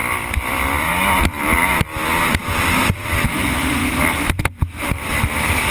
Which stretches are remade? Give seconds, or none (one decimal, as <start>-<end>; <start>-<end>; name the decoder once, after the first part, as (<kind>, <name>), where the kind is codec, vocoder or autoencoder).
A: 0.0-0.9 (vocoder, BigVGAN v2); 2.8-3.8; 4.8-5.7